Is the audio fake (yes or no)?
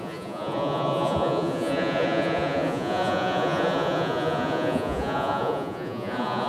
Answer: yes